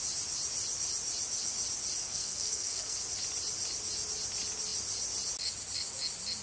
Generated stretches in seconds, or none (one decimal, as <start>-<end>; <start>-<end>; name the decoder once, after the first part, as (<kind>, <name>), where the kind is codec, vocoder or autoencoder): 2.0-3.0 (codec, SNAC)